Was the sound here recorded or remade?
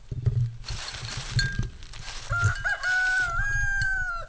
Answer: recorded